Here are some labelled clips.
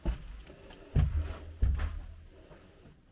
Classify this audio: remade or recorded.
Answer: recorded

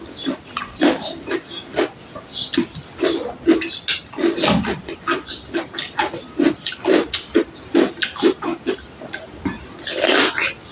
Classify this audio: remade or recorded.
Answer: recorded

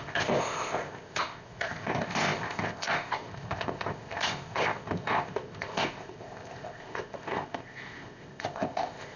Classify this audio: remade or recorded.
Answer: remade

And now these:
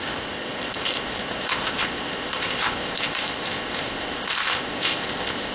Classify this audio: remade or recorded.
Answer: remade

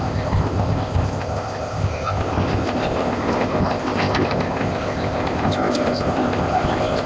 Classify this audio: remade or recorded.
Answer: remade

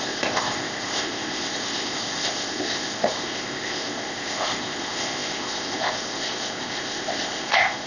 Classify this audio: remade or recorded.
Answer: remade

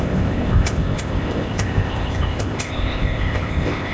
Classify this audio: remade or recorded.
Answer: remade